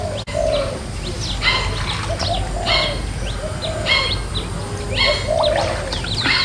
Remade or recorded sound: recorded